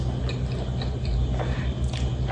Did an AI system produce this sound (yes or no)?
no